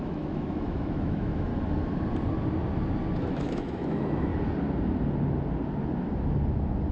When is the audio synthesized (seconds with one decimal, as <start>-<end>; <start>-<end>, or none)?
0.0-1.5; 3.2-4.3